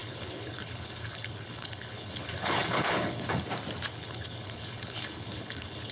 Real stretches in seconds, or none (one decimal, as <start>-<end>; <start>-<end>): 3.5-3.9